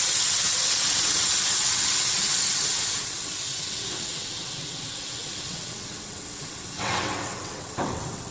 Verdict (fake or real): fake